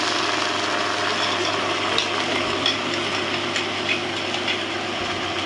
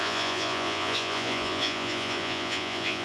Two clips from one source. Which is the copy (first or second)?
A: second